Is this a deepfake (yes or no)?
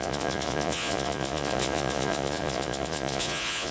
yes